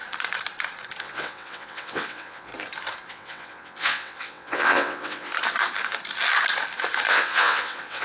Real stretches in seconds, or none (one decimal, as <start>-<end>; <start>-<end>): 0.0-1.0; 2.5-3.1; 5.3-7.1